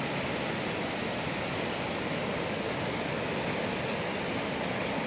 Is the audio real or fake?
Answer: real